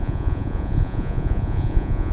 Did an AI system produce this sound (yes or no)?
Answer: yes